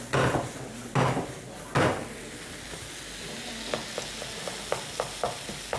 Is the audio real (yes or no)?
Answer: yes